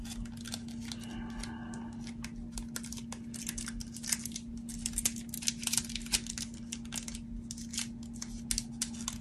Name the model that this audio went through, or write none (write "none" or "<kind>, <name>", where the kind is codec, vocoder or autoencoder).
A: none